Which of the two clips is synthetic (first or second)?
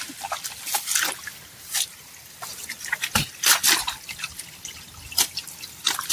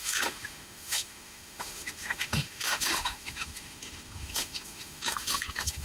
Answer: second